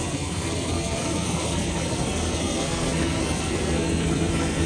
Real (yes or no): no